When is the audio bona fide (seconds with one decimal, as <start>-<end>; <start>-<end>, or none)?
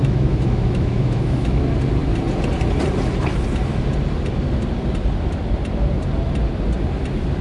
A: 1.6-7.4